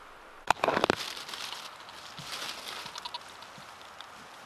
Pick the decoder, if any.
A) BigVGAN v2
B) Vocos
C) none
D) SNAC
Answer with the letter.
C